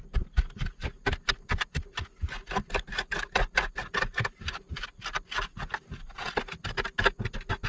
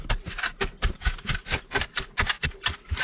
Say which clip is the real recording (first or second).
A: first